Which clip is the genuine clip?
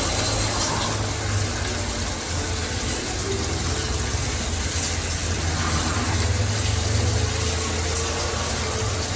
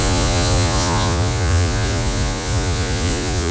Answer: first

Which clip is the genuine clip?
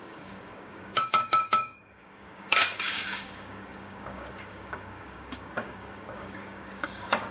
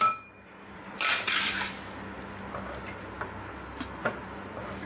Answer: second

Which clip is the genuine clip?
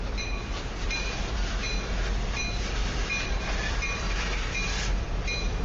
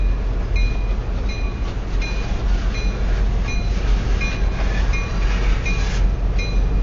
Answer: second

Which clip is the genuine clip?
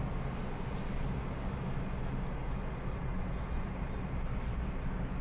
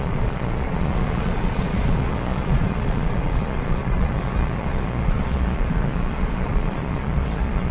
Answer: first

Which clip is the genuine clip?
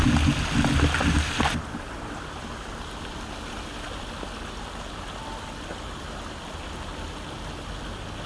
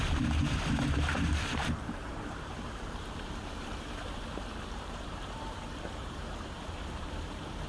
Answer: first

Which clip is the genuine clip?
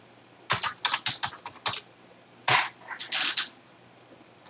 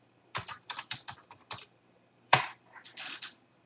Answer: first